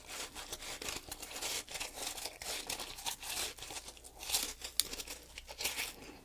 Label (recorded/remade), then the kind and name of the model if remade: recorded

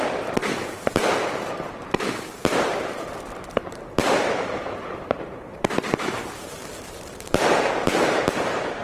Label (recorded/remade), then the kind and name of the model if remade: remade, vocoder, BigVGAN v2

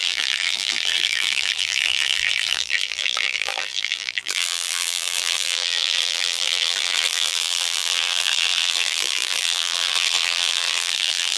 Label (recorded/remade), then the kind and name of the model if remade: remade, vocoder, BigVGAN v2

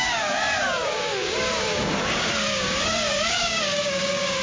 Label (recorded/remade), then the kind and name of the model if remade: remade, codec, DAC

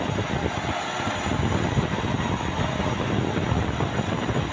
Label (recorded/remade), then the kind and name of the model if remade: recorded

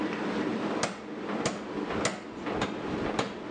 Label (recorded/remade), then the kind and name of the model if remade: recorded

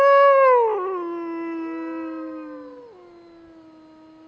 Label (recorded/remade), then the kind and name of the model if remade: recorded